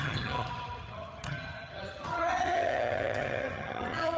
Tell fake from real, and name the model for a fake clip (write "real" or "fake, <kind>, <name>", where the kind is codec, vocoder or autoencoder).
fake, vocoder, HiFi-GAN